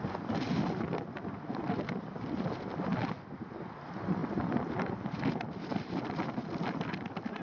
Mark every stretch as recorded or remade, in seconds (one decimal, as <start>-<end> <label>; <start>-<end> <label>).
0.0-4.2 recorded; 4.2-4.9 remade; 4.9-5.7 recorded; 5.7-6.3 remade; 6.3-7.4 recorded